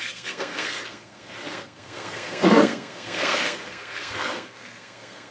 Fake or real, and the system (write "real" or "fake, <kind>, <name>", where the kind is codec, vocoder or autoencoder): fake, codec, SNAC